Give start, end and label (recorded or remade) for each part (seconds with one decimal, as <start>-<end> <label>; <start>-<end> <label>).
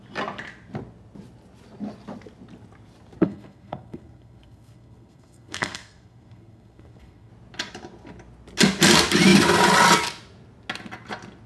0.0-3.2 recorded; 3.2-7.3 remade; 7.3-11.5 recorded